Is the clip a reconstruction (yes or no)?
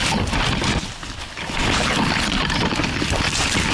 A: no